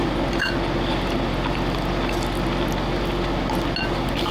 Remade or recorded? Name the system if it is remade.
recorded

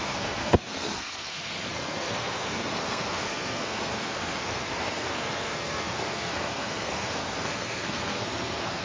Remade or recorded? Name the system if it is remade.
remade, codec, SNAC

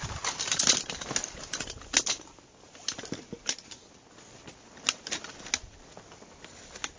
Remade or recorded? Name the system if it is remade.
recorded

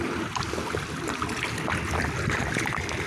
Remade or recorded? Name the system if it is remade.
recorded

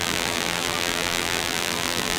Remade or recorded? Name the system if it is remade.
remade, vocoder, BigVGAN v2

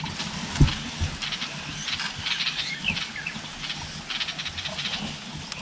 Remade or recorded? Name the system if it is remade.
recorded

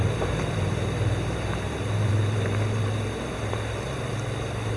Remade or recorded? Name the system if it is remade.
remade, vocoder, BigVGAN v2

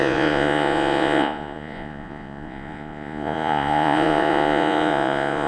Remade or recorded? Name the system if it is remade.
remade, vocoder, Vocos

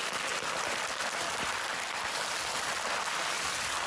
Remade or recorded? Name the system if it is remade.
recorded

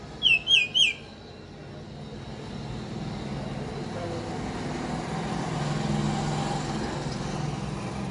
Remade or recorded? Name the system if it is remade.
recorded